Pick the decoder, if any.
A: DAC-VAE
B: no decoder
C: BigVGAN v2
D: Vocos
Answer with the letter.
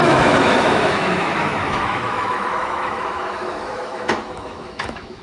A